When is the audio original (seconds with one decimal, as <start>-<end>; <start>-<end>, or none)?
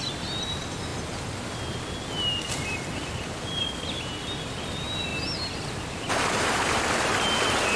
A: 0.0-7.8